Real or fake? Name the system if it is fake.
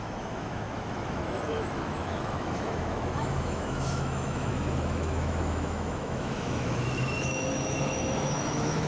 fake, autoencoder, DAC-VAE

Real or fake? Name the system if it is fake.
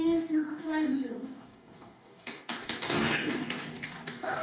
fake, codec, DAC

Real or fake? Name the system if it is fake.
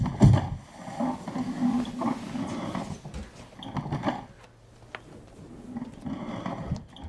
real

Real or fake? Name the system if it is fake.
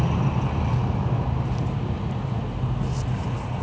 real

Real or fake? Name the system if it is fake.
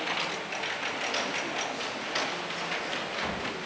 real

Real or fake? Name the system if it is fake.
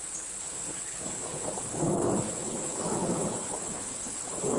fake, codec, HILCodec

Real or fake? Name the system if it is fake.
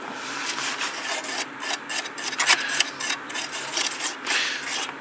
real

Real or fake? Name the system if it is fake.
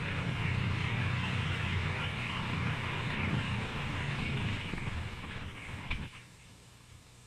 fake, codec, DAC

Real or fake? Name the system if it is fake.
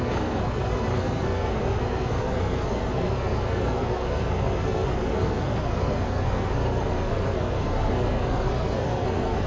fake, codec, SNAC